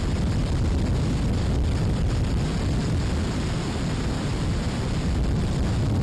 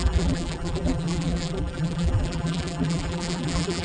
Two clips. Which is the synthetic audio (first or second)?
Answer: second